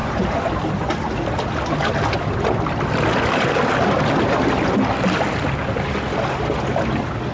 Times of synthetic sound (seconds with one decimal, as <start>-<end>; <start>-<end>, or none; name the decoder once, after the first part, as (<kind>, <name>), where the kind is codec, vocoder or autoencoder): none